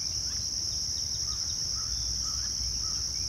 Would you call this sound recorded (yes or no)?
yes